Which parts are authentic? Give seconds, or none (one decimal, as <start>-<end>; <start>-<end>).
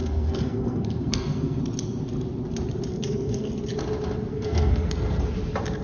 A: 1.6-2.9; 3.5-4.3; 4.9-5.8